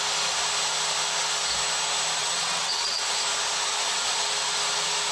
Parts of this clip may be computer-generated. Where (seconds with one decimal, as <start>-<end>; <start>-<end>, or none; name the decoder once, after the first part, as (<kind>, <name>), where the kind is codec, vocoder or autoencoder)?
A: 2.2-3.0 (vocoder, WaveNeXt)